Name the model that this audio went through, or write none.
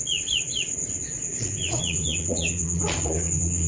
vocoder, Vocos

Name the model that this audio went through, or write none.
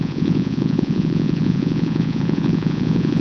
vocoder, Vocos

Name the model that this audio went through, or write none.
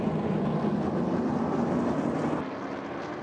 none